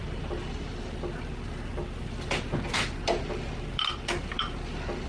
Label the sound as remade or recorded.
recorded